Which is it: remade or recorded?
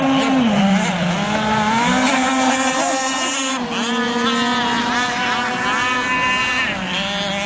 recorded